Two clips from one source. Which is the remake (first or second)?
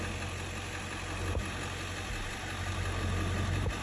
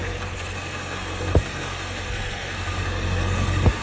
second